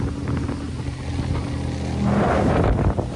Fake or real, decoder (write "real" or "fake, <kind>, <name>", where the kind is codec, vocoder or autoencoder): real